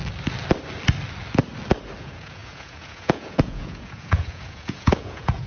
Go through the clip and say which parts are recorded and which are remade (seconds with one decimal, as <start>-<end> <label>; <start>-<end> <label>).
0.0-2.0 recorded; 2.0-5.5 remade